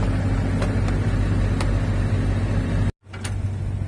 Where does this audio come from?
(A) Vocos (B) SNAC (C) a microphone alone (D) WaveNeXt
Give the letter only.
C